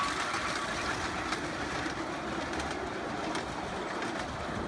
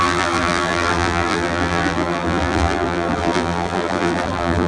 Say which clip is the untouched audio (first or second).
first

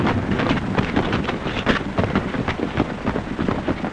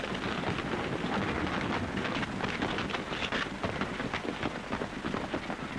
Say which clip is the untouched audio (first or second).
second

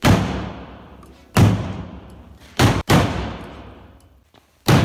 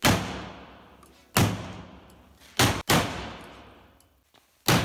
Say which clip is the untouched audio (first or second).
second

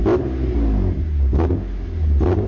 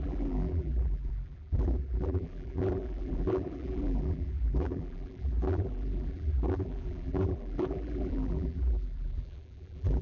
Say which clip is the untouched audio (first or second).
first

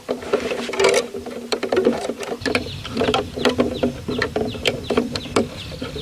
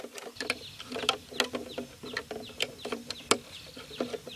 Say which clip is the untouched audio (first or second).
second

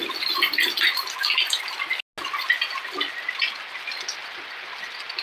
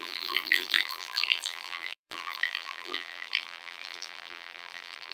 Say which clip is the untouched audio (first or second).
first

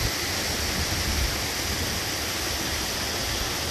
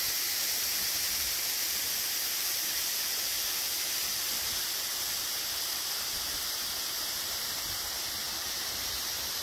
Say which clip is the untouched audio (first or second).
first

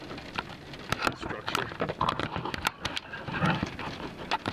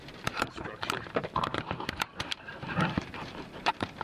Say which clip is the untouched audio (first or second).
first